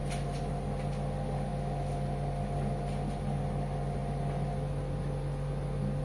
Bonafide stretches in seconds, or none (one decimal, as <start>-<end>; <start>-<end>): 0.0-6.0